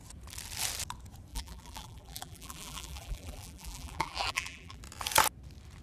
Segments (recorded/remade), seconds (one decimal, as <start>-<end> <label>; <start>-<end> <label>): 0.0-1.3 recorded; 1.3-4.8 remade; 4.8-5.8 recorded